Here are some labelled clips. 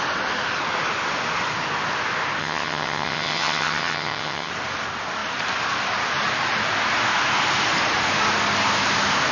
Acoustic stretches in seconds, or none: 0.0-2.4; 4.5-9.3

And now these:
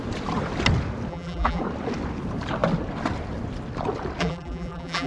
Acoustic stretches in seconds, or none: 0.0-1.1; 1.6-4.2

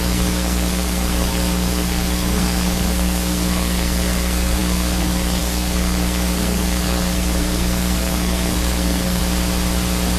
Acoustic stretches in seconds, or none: 9.2-10.2

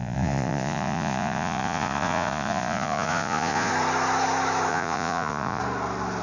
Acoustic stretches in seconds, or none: 3.7-4.7; 5.6-6.2

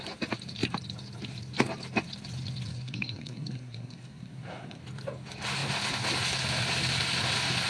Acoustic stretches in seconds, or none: 0.0-2.7; 4.8-7.7

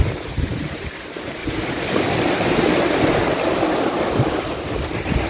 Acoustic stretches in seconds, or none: 1.4-4.6